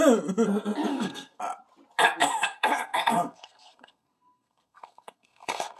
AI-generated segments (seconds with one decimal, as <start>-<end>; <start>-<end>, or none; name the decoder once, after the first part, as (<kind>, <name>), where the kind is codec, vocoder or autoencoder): 0.9-1.4 (codec, SNAC); 2.2-5.8